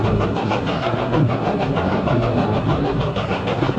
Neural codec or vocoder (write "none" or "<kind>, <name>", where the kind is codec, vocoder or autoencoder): codec, SNAC